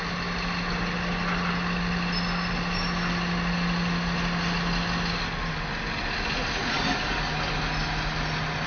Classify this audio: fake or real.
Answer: real